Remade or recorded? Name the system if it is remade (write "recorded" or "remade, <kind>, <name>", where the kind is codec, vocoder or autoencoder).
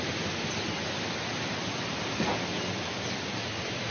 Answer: recorded